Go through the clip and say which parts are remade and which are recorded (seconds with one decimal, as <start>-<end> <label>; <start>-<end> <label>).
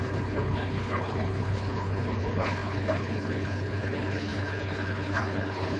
0.0-5.8 remade